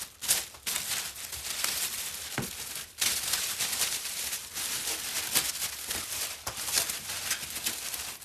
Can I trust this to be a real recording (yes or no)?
yes